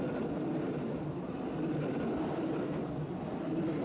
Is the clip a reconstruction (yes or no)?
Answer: no